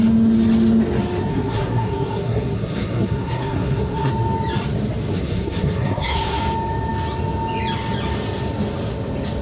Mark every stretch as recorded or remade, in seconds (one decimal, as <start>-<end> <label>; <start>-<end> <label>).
0.0-1.3 recorded; 1.3-4.1 remade; 4.1-5.1 recorded; 5.1-6.4 remade; 6.4-9.4 recorded